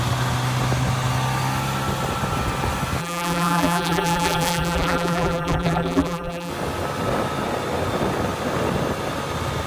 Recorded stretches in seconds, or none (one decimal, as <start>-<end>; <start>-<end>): 0.0-3.0; 6.5-9.7